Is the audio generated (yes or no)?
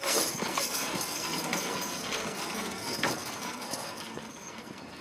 yes